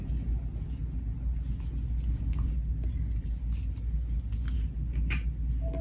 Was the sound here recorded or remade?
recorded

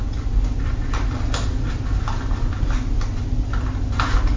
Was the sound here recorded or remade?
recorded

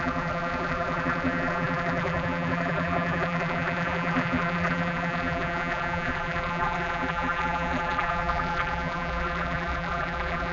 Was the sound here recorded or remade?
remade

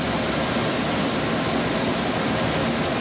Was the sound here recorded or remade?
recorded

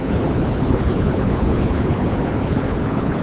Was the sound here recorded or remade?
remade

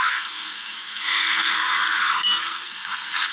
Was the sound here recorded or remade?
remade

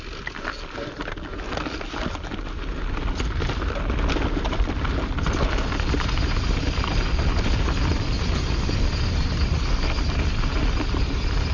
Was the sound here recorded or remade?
recorded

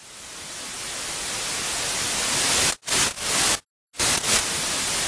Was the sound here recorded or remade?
recorded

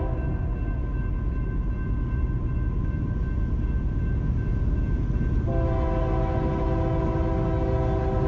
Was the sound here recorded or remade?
recorded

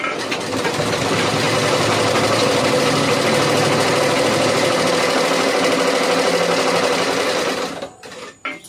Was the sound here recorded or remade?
recorded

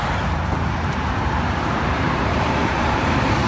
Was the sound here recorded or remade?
remade